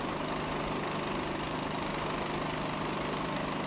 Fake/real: real